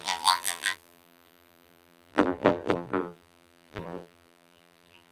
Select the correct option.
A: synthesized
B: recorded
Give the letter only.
A